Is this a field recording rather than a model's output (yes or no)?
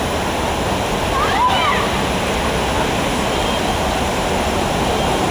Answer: yes